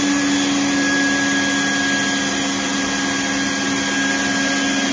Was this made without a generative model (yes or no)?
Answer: yes